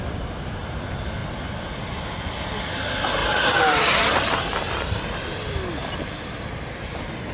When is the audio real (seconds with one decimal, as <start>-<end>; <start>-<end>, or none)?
0.0-7.3